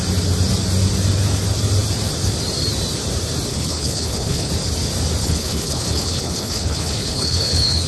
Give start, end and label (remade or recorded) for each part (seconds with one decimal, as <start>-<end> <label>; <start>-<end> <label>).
0.0-3.5 recorded; 3.5-4.5 remade; 4.5-5.2 recorded; 5.2-7.9 remade